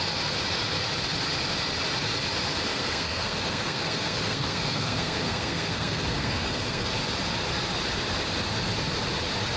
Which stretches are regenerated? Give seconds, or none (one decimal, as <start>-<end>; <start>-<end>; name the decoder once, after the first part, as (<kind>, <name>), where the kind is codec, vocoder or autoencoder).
2.7-6.9 (codec, SNAC)